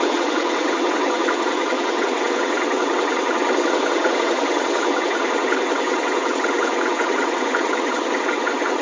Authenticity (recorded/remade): remade